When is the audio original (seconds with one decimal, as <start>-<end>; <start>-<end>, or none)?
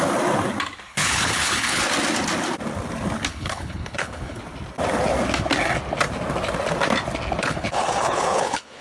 0.0-0.9; 1.8-3.3; 4.4-7.4